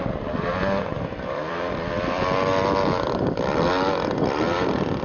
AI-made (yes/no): yes